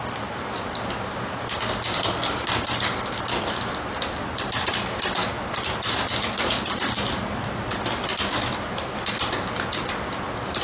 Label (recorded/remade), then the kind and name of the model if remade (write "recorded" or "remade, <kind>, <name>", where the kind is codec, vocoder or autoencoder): recorded